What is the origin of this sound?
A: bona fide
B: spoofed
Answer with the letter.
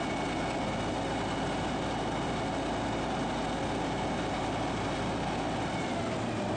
A